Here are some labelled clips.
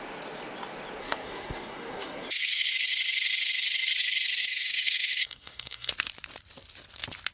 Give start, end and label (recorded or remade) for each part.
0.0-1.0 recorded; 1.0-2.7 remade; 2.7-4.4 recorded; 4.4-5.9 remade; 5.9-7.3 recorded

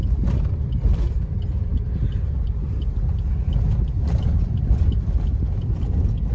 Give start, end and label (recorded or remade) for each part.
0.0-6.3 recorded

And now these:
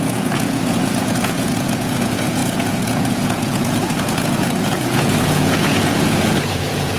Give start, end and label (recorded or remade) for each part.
0.0-7.0 remade

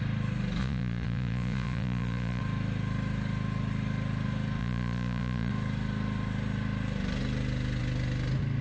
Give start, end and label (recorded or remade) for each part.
0.0-0.6 recorded; 0.6-2.4 remade; 2.4-4.6 recorded; 4.6-5.5 remade; 5.5-8.6 recorded

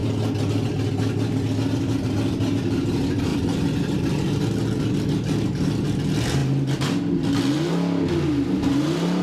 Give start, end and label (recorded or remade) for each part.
0.0-3.3 recorded; 3.3-4.4 remade; 4.4-9.2 recorded